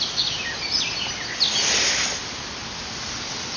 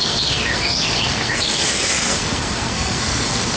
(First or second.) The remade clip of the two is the second